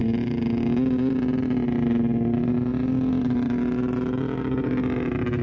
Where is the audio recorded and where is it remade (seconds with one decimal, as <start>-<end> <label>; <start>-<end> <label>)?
0.0-5.4 recorded